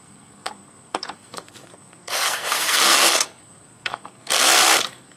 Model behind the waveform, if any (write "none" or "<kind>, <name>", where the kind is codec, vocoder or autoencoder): codec, SNAC